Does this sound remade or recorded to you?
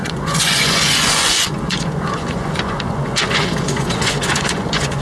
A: remade